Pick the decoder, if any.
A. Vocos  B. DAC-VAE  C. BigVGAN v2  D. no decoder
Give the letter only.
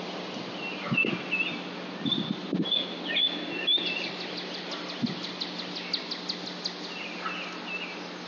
D